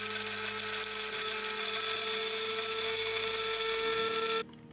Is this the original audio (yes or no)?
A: yes